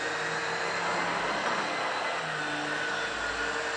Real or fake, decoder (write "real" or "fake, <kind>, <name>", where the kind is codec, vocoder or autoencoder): real